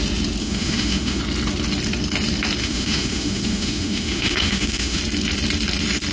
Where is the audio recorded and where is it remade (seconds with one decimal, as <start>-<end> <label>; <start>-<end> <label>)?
0.0-0.4 recorded; 0.4-1.2 remade; 1.2-2.6 recorded; 2.6-5.0 remade; 5.0-6.1 recorded